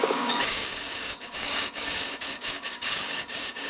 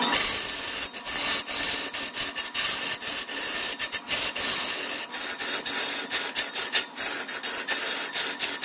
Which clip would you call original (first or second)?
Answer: second